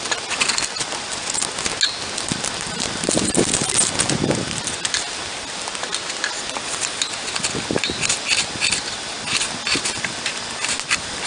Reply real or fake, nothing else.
real